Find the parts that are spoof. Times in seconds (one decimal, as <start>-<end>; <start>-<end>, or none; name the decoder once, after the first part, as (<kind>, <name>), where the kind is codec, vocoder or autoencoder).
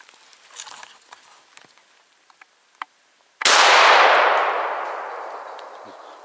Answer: none